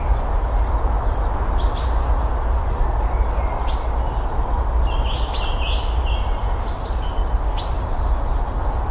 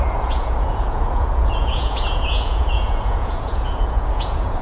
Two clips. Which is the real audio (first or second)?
first